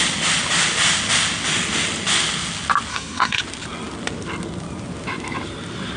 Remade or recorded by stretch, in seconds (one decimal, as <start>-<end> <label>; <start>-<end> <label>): 0.0-2.9 recorded; 2.9-3.4 remade; 3.4-6.0 recorded